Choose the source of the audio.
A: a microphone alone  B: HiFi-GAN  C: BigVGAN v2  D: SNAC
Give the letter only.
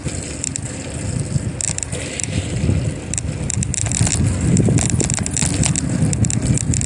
A